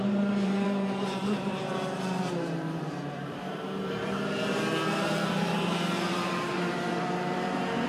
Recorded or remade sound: remade